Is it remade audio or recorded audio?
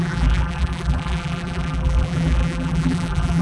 remade